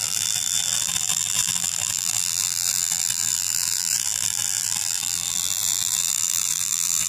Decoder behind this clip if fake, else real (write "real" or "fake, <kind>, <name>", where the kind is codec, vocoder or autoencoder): fake, vocoder, BigVGAN v2